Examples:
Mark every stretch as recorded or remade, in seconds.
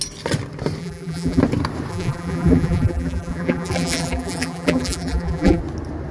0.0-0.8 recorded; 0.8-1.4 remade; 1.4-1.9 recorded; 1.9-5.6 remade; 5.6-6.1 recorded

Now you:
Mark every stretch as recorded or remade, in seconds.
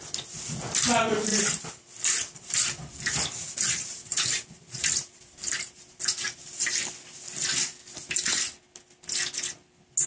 0.0-1.3 recorded; 1.3-6.6 remade; 6.6-10.1 recorded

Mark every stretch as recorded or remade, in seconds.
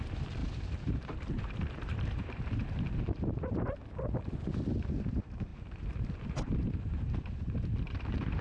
0.0-3.8 remade; 3.8-4.7 recorded; 4.7-8.4 remade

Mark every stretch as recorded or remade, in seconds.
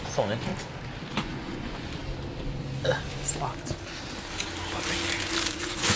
0.0-0.5 remade; 0.5-1.1 recorded; 1.1-2.0 remade; 2.0-5.6 recorded; 5.6-6.0 remade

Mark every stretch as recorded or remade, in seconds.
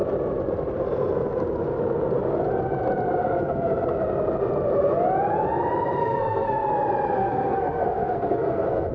0.0-3.2 recorded; 3.2-3.7 remade; 3.7-6.0 recorded; 6.0-6.7 remade; 6.7-7.2 recorded; 7.2-8.9 remade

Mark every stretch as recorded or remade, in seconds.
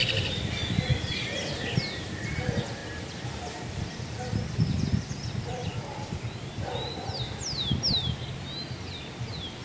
0.0-2.8 recorded; 2.8-7.2 remade; 7.2-9.6 recorded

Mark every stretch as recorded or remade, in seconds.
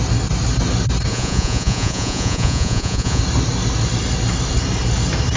0.0-1.1 recorded; 1.1-3.2 remade; 3.2-5.4 recorded